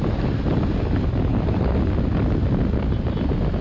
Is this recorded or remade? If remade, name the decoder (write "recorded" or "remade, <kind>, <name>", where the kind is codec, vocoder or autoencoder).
recorded